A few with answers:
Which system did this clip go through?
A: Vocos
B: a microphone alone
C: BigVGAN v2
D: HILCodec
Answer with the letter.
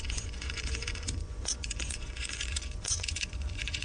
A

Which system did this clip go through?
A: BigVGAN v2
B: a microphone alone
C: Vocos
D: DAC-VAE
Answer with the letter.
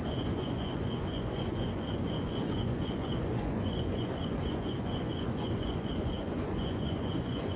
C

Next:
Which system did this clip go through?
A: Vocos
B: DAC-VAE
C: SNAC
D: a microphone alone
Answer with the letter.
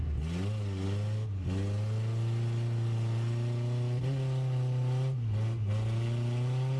D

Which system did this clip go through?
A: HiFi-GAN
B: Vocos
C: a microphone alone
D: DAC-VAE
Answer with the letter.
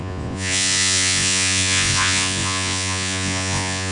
B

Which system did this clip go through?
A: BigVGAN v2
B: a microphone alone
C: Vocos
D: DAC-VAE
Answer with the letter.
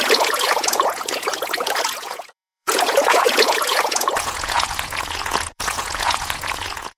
C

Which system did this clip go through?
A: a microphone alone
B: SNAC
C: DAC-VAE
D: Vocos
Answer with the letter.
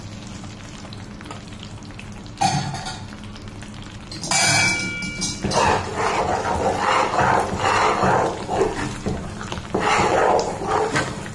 A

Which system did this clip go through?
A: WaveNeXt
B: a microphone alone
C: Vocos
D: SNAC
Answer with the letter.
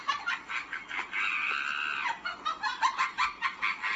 B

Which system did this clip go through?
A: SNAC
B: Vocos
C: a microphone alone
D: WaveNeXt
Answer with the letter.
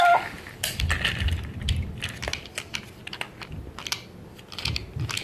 C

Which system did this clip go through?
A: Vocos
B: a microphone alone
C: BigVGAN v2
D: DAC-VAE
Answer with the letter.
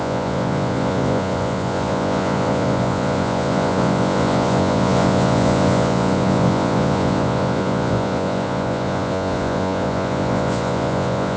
A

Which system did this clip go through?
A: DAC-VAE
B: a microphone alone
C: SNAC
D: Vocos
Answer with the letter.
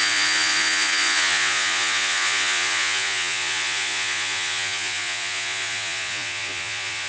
D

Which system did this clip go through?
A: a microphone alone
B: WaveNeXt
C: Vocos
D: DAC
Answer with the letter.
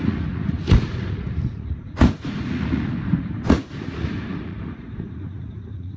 C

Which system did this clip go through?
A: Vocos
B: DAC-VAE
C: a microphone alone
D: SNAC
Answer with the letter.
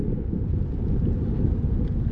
C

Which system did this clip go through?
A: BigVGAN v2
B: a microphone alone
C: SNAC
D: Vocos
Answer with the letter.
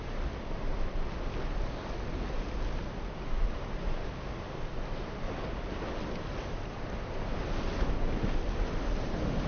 B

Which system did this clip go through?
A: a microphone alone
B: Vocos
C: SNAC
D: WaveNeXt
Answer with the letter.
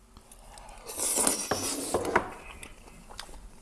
A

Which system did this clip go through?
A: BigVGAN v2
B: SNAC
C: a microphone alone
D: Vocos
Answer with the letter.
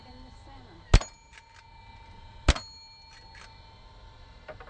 C